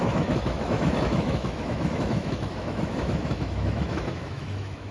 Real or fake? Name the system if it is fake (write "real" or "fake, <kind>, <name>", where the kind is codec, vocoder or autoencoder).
fake, autoencoder, DAC-VAE